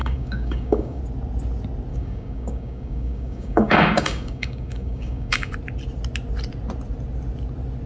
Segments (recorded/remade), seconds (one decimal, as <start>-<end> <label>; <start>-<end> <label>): 0.0-1.0 remade; 1.0-1.9 recorded; 1.9-5.5 remade; 5.5-7.9 recorded